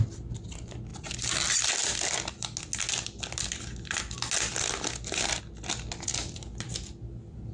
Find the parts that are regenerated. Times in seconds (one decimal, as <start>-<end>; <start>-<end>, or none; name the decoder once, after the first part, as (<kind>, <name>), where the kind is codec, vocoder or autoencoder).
none